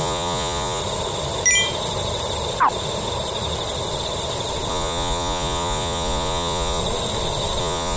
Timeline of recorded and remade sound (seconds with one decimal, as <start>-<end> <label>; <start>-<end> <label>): 0.0-0.8 remade; 0.8-4.7 recorded; 4.7-6.8 remade; 6.8-7.6 recorded; 7.6-8.0 remade